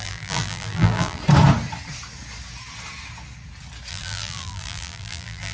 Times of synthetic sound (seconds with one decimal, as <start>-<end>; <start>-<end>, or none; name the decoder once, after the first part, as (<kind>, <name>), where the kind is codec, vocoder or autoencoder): 0.0-1.2 (vocoder, BigVGAN v2); 3.9-5.5